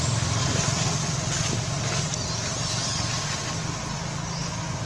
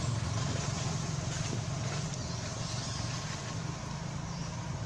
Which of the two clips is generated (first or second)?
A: second